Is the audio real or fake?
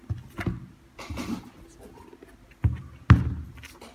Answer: real